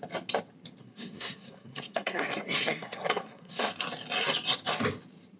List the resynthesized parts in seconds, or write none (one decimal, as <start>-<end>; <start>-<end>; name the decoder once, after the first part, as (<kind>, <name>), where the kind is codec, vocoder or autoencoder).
0.8-3.7 (codec, SNAC)

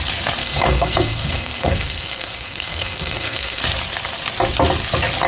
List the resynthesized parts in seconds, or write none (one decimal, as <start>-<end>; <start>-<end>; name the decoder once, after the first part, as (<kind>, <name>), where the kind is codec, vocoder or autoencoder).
0.4-3.6 (codec, SNAC)

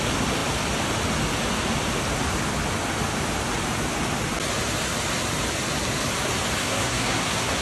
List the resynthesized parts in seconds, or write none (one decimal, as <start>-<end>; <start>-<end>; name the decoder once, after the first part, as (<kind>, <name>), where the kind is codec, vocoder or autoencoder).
6.6-7.6 (codec, SNAC)

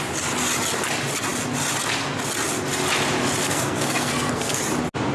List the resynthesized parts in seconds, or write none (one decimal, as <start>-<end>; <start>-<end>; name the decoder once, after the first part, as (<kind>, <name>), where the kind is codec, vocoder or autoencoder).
3.4-4.6 (codec, SNAC)

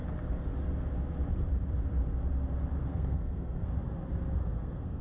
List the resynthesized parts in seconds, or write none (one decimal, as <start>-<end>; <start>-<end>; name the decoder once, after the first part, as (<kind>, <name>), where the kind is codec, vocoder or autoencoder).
2.8-3.7 (codec, SNAC); 4.4-5.0

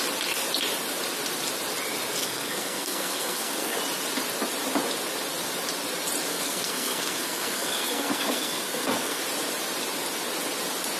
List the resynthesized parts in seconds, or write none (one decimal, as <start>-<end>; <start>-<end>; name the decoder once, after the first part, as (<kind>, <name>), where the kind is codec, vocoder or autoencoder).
2.2-3.8 (codec, SNAC); 6.3-9.2

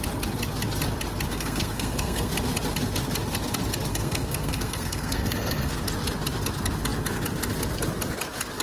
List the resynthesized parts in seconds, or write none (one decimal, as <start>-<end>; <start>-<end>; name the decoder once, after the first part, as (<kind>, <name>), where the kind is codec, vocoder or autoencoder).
1.3-2.3 (codec, SNAC); 3.9-5.7